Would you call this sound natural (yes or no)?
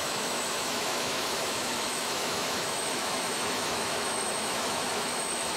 no